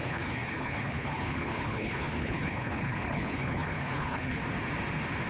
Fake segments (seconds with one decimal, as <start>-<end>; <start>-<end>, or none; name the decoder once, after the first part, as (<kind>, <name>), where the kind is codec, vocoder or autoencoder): 0.0-4.4 (codec, HILCodec)